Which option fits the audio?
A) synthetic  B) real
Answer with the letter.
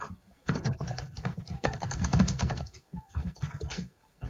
A